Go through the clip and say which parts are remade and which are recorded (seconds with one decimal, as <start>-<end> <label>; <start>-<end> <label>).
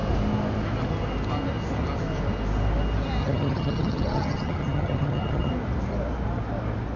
0.0-3.2 recorded; 3.2-5.5 remade; 5.5-7.0 recorded